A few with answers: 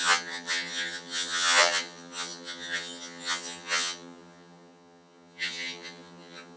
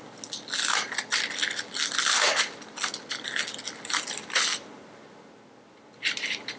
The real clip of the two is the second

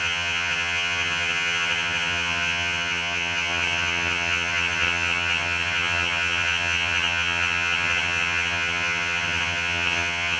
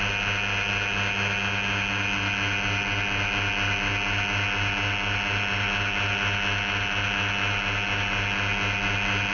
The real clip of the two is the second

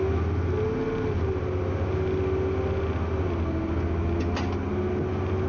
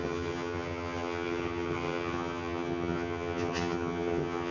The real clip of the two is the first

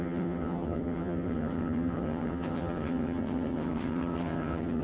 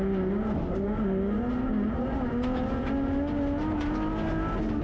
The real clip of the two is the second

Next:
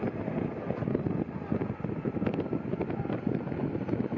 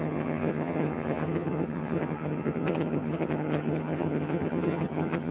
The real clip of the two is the first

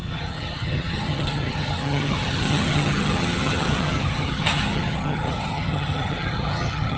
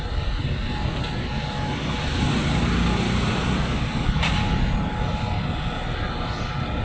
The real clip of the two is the second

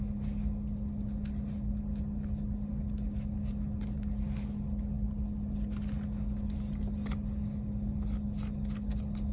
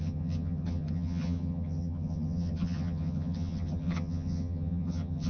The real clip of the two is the first